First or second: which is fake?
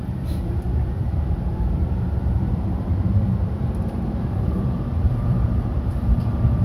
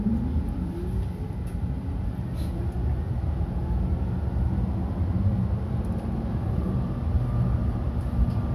first